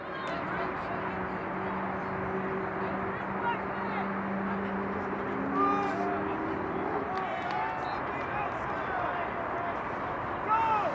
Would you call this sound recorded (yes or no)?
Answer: yes